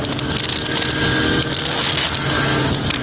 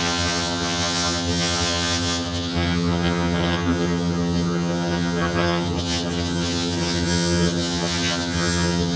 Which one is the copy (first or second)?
second